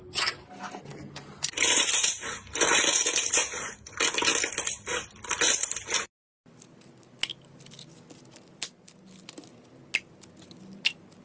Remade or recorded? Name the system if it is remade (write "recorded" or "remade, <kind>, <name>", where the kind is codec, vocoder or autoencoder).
recorded